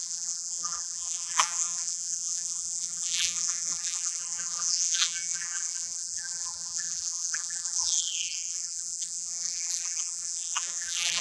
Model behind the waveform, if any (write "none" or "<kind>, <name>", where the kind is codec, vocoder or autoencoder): vocoder, BigVGAN v2